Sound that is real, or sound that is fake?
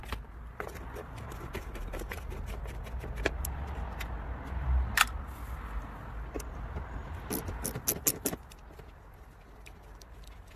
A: real